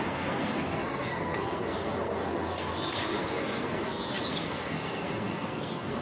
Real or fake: fake